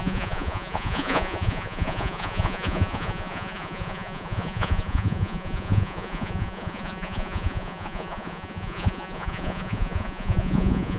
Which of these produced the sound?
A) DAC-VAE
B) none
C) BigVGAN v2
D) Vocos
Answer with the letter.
D